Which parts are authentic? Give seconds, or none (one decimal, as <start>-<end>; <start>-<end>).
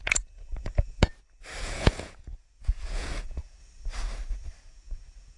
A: 1.1-1.6; 3.6-4.6